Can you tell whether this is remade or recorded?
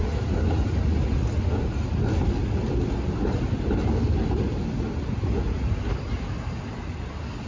recorded